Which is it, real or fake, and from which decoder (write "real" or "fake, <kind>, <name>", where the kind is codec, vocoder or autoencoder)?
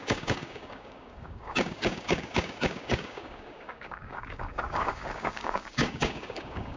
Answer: fake, codec, DAC